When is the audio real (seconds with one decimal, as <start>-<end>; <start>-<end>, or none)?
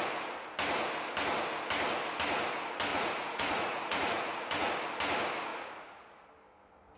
0.0-2.9; 4.7-5.5; 6.3-7.0